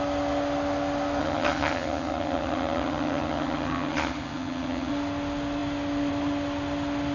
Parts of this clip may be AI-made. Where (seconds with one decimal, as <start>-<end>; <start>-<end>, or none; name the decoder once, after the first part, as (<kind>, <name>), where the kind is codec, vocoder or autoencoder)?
1.2-4.9 (vocoder, HiFi-GAN)